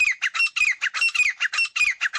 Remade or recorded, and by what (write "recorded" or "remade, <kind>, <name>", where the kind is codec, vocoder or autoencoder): recorded